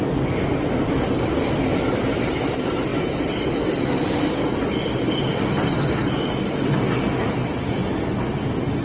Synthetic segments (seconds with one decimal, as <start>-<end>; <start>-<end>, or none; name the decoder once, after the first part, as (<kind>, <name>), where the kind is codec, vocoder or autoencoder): none